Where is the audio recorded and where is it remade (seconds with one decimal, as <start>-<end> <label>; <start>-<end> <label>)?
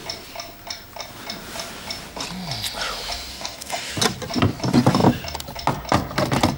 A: 0.0-3.3 recorded; 3.3-3.9 remade; 3.9-6.6 recorded